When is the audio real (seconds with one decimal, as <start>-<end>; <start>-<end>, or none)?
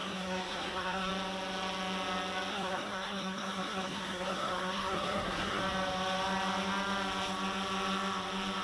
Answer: 1.1-2.5; 5.6-8.6